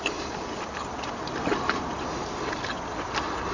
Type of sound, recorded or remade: recorded